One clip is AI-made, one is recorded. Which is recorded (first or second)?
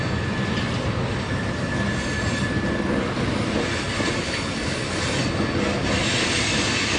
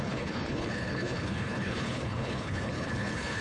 first